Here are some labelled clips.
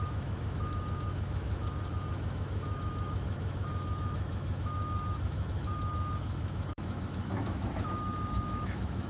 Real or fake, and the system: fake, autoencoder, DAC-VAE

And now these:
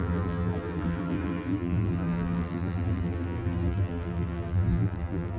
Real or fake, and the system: fake, vocoder, BigVGAN v2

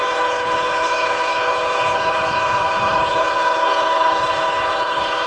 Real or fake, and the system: fake, codec, HILCodec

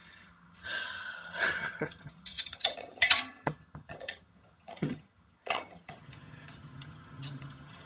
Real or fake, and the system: fake, vocoder, HiFi-GAN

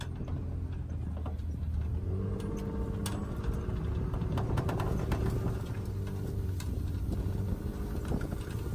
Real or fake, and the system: real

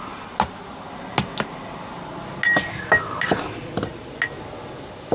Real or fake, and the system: real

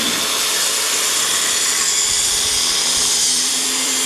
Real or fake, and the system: fake, vocoder, BigVGAN v2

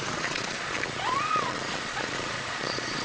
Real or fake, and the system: fake, vocoder, Vocos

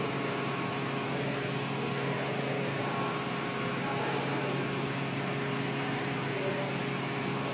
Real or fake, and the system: real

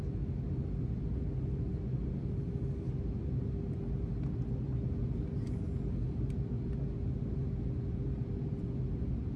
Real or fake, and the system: real